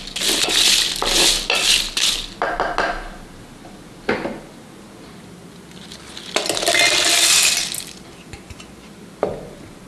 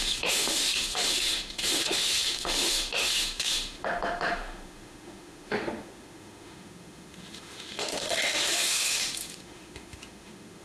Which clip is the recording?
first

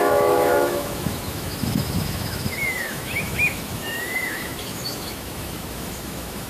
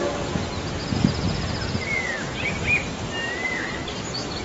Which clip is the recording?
second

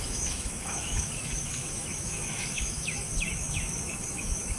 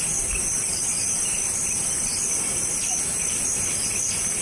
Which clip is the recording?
second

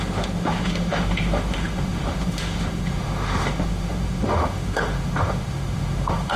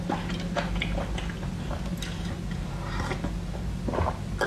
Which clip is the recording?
second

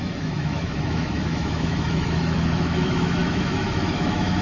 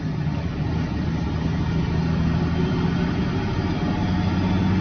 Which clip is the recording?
second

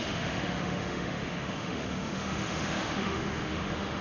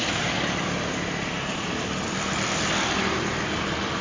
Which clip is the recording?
second